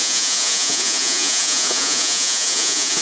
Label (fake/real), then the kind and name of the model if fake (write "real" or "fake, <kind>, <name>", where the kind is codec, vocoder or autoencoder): fake, vocoder, Vocos